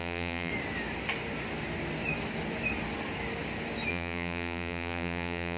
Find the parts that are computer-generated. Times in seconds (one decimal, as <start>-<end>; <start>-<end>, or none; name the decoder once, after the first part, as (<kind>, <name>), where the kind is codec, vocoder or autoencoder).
0.0-0.5 (vocoder, BigVGAN v2); 3.9-5.6